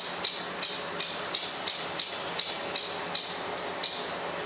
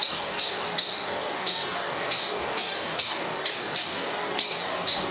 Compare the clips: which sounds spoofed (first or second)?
second